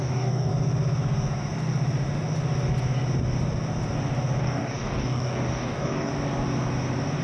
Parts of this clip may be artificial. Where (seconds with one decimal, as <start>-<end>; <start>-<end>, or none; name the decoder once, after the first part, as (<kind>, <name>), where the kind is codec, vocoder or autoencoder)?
0.0-0.5 (codec, DAC); 4.4-6.1